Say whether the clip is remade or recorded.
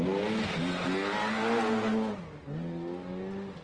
recorded